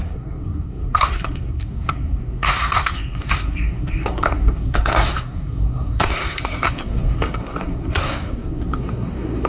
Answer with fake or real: fake